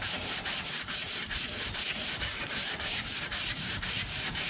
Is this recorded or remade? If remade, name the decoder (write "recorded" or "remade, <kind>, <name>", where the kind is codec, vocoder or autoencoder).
remade, vocoder, BigVGAN v2